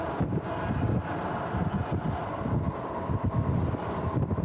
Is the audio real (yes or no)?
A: yes